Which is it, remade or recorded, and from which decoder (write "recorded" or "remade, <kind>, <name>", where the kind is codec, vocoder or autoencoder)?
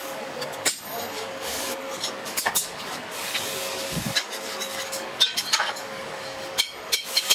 remade, codec, DAC